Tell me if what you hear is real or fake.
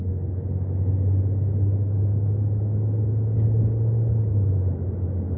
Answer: real